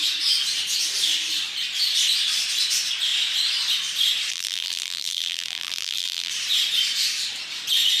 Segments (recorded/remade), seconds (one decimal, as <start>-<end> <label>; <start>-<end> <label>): 0.0-4.3 recorded; 4.3-6.3 remade; 6.3-8.0 recorded